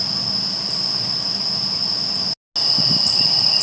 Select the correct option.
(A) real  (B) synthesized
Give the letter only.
A